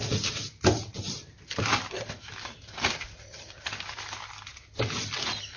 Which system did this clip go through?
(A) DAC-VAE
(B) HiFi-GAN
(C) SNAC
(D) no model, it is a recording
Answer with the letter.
D